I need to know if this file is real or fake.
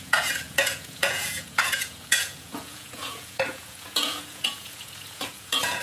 fake